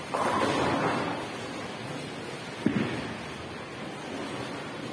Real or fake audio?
real